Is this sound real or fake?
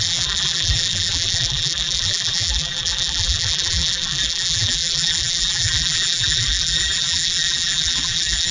fake